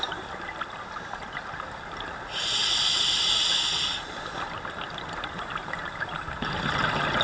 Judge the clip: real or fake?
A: real